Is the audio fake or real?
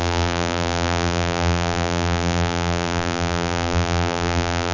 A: fake